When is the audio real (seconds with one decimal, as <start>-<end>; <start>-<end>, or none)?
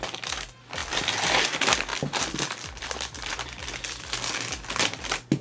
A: 0.0-0.8; 1.4-1.9; 4.0-5.4